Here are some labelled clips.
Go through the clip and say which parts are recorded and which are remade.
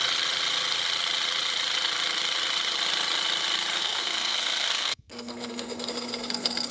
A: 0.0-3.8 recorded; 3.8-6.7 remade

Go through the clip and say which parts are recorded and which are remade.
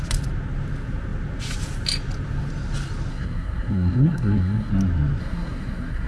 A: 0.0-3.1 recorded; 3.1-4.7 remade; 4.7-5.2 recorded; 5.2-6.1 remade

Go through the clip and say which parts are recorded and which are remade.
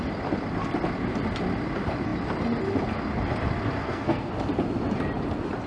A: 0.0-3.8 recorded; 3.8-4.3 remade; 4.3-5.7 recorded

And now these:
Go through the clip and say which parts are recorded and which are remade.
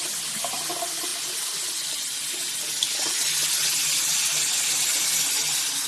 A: 0.0-5.9 recorded